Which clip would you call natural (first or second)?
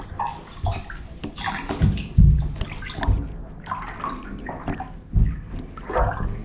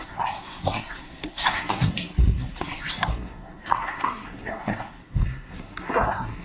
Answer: first